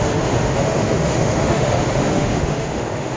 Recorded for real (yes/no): no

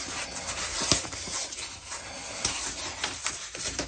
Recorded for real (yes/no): yes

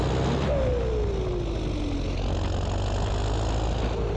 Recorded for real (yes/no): yes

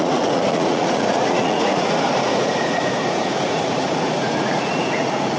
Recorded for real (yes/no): no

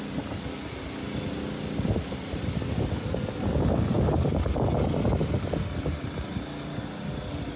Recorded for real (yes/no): yes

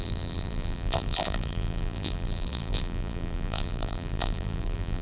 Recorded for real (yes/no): no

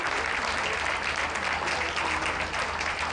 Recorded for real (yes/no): yes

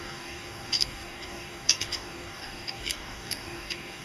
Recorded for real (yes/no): no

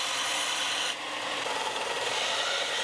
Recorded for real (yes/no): yes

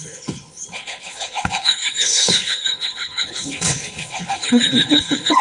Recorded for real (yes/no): no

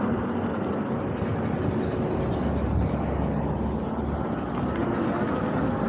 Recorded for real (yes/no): yes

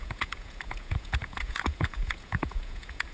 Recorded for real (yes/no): no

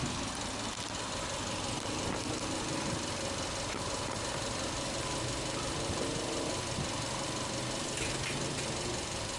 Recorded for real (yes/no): yes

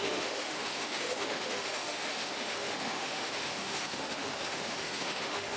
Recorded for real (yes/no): no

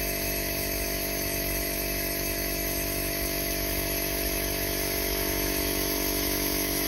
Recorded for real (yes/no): no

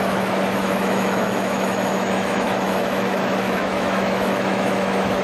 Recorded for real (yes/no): no